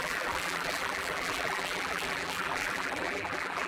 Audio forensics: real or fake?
fake